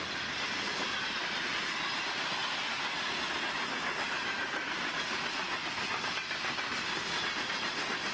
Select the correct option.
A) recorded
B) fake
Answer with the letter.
A